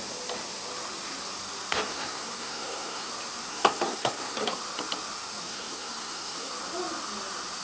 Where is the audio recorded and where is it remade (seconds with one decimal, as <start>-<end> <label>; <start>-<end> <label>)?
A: 0.0-1.9 recorded; 1.9-3.1 remade; 3.1-3.5 recorded; 3.5-4.6 remade; 4.6-5.4 recorded; 5.4-6.5 remade; 6.5-7.6 recorded